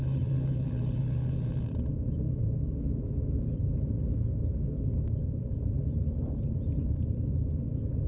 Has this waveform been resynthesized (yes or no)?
yes